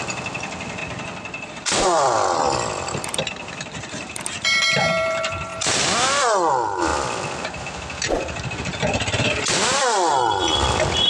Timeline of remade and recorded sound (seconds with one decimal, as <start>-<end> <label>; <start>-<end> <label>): 0.0-0.8 remade; 0.8-1.5 recorded; 1.5-5.5 remade; 5.5-6.5 recorded; 6.5-6.9 remade; 6.9-7.6 recorded; 7.6-11.1 remade